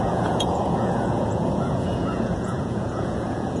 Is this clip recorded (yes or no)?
no